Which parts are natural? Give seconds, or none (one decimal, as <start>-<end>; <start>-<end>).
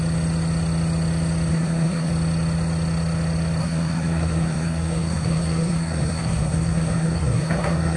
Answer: 0.0-1.5; 2.1-3.6